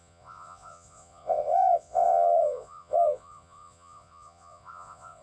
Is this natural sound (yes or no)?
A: no